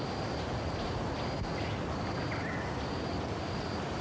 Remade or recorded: recorded